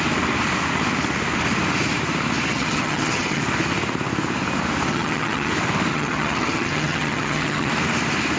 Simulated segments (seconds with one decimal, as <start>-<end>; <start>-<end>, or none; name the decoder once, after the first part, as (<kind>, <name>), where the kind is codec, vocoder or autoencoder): 2.5-3.4 (vocoder, HiFi-GAN); 4.9-5.5; 5.9-7.7